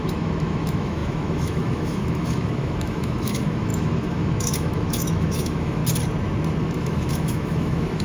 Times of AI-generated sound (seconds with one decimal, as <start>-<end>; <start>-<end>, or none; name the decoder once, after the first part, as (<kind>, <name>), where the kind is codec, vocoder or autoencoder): 0.0-5.8 (autoencoder, DAC-VAE); 6.6-8.0